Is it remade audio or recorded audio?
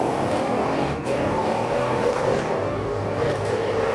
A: remade